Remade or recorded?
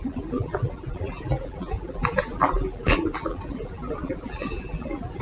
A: remade